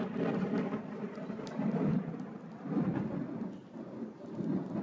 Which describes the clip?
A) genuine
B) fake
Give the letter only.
A